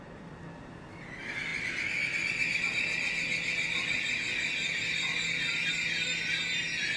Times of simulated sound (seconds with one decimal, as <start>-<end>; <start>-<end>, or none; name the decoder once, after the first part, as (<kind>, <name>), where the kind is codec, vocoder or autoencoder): none